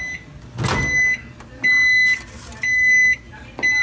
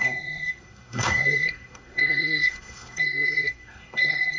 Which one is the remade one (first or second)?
second